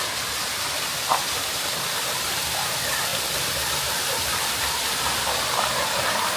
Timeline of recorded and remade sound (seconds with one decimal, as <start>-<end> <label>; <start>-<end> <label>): 0.0-1.1 recorded; 1.1-2.5 remade; 2.5-3.1 recorded; 3.1-4.9 remade; 4.9-6.4 recorded